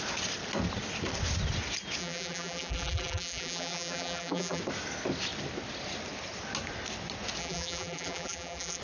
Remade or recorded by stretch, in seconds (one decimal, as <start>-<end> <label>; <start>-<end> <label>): 0.0-2.0 recorded; 2.0-4.6 remade; 4.6-7.4 recorded; 7.4-8.8 remade